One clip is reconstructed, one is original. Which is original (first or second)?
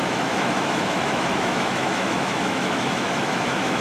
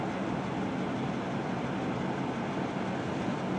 second